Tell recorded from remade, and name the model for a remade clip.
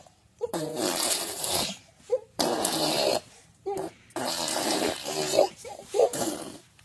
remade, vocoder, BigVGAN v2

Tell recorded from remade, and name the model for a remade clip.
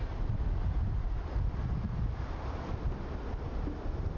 recorded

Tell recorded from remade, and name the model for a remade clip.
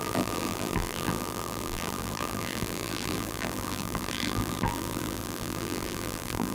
remade, vocoder, BigVGAN v2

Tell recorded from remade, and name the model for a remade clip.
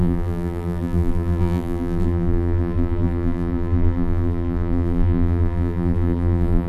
remade, vocoder, BigVGAN v2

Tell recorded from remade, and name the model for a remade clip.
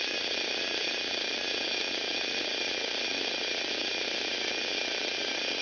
recorded